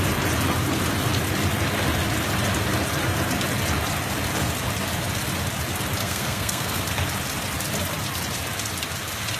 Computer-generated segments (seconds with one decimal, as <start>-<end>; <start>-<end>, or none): 6.0-6.8